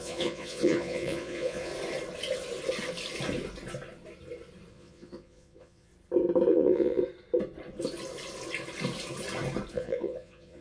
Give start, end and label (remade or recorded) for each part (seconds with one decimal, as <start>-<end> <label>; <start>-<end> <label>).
0.0-1.7 remade; 1.7-4.7 recorded; 4.7-5.9 remade; 5.9-6.5 recorded; 6.5-7.0 remade; 7.0-9.7 recorded; 9.7-10.6 remade